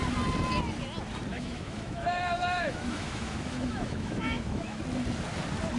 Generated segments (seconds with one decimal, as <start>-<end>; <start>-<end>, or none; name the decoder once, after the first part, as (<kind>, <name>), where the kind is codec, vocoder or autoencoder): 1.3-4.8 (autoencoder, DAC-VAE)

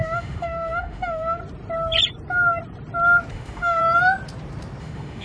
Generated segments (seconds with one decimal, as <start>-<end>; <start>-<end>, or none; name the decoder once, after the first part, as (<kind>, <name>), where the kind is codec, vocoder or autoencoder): 0.0-1.4 (autoencoder, DAC-VAE); 3.3-3.8; 4.8-5.2

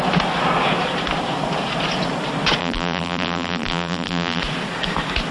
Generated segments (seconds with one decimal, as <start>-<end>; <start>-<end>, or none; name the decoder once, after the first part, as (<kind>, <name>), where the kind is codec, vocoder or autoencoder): 2.6-4.4 (vocoder, BigVGAN v2)

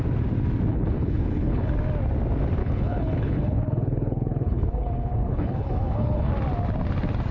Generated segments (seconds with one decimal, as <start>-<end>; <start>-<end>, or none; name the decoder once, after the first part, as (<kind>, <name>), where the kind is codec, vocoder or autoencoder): 0.7-1.7 (codec, HILCodec); 2.6-6.3